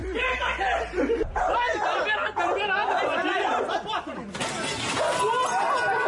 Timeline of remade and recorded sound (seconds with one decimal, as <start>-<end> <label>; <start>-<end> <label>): 0.0-3.7 remade; 3.7-6.1 recorded